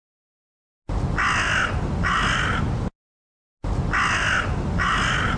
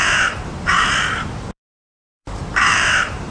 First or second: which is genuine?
first